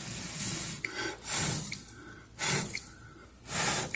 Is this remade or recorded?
recorded